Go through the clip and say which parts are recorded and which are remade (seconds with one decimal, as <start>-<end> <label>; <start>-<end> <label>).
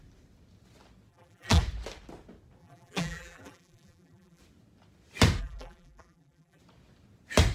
0.0-1.1 recorded; 1.1-1.6 remade; 1.6-2.6 recorded; 2.6-4.4 remade; 4.4-5.4 recorded; 5.4-6.6 remade; 6.6-7.5 recorded